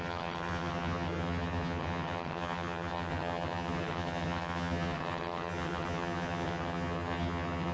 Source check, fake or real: fake